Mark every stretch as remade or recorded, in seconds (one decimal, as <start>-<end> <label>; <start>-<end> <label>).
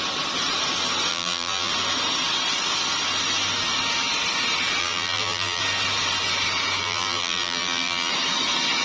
0.0-1.1 recorded; 1.1-1.7 remade; 1.7-4.8 recorded; 4.8-5.6 remade; 5.6-6.8 recorded; 6.8-8.1 remade; 8.1-8.8 recorded